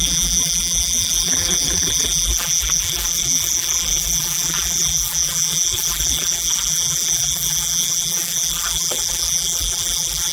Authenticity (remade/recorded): remade